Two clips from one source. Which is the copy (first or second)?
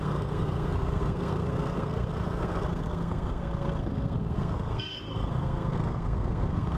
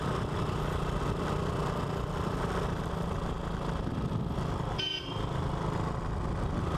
first